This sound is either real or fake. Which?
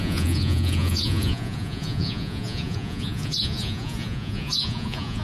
fake